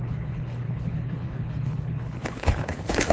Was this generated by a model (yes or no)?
yes